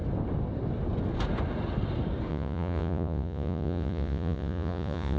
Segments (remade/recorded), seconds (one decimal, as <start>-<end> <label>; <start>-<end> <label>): 0.0-2.3 recorded; 2.3-5.2 remade